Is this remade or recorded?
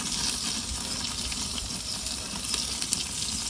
recorded